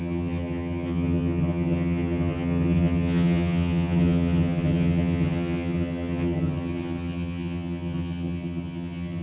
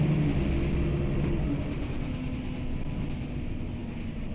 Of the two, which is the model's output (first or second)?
first